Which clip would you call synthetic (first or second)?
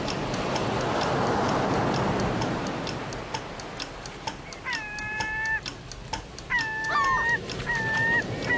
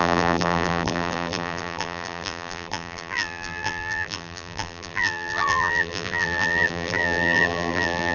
second